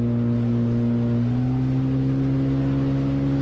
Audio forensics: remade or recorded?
recorded